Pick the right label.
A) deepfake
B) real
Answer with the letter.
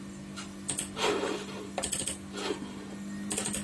B